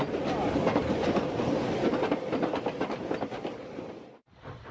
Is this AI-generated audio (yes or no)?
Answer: no